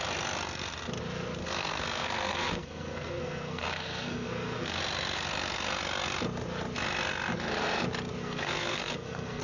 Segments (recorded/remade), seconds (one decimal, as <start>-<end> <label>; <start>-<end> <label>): 0.0-1.4 recorded; 1.4-4.8 remade; 4.8-8.2 recorded; 8.2-9.4 remade